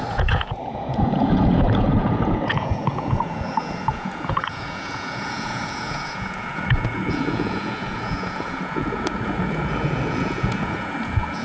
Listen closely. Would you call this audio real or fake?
fake